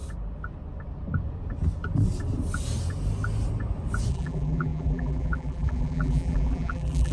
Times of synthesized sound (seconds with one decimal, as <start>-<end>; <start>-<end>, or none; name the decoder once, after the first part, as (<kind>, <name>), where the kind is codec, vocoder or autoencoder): 4.1-7.1 (vocoder, BigVGAN v2)